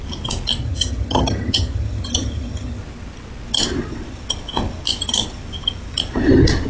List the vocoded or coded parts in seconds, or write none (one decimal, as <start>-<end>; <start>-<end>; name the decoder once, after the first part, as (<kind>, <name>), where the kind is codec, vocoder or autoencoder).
0.6-2.8 (vocoder, HiFi-GAN)